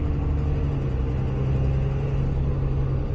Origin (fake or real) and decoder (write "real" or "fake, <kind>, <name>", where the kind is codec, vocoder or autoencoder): real